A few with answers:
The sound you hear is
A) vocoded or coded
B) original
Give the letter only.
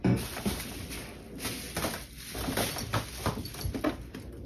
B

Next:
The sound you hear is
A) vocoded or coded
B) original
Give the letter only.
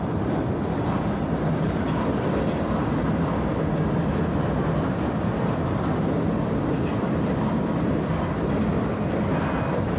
B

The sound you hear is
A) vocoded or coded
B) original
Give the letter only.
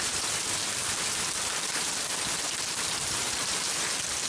A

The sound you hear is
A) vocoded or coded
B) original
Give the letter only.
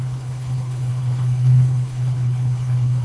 A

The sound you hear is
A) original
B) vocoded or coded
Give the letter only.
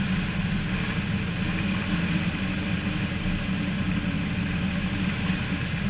A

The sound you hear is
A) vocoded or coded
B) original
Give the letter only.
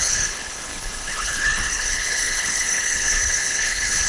A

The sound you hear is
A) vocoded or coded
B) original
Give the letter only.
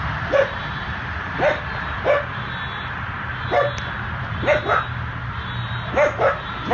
B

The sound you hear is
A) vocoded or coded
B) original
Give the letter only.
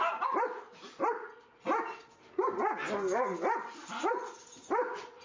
B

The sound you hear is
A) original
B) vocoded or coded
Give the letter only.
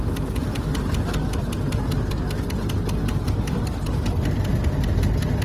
A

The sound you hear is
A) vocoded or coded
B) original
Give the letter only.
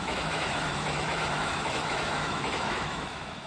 A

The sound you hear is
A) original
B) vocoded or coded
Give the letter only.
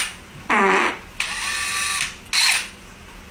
A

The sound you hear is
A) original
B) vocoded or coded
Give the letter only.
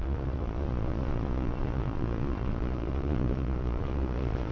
B